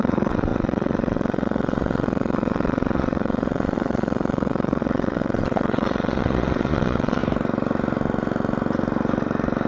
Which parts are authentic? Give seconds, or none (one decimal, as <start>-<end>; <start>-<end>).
7.2-9.7